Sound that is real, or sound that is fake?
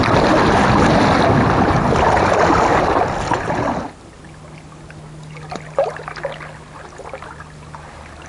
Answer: real